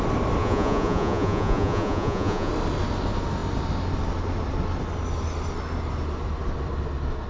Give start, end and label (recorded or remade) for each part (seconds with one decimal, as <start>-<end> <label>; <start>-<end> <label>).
0.0-0.4 recorded; 0.4-2.5 remade; 2.5-7.3 recorded